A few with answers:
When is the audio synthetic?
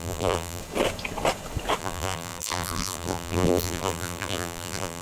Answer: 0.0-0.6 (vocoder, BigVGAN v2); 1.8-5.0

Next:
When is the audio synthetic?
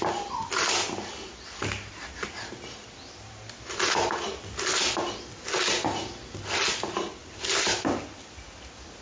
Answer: none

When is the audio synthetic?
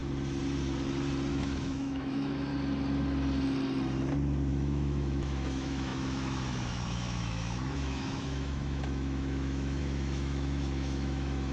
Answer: 1.3-2.5 (autoencoder, DAC-VAE); 4.5-11.5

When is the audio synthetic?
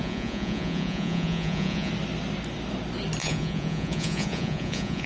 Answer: 0.0-1.9 (vocoder, Vocos); 3.2-5.1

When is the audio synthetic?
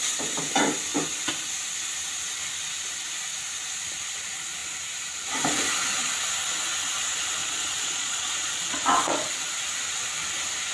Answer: 7.4-9.3 (vocoder, Vocos)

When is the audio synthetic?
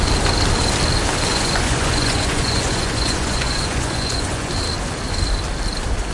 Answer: 1.3-4.5 (vocoder, Vocos)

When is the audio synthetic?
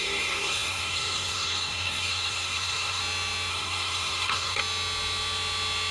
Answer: 0.0-3.0 (codec, SNAC); 3.5-4.6